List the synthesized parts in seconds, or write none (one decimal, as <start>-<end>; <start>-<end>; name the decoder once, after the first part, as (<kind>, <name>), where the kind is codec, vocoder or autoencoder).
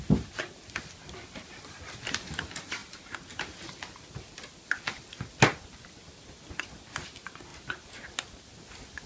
none